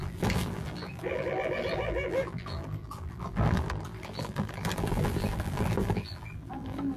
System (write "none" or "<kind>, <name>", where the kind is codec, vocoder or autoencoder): vocoder, BigVGAN v2